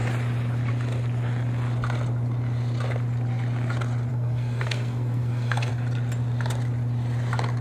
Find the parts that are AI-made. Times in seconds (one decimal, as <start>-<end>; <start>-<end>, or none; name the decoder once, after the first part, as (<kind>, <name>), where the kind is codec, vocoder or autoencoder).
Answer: 4.1-5.7 (codec, SNAC)